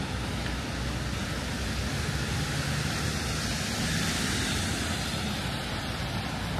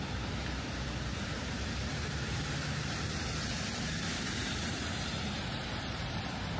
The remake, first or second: second